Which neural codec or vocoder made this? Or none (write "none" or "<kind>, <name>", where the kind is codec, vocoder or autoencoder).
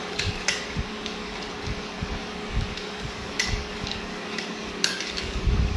codec, DAC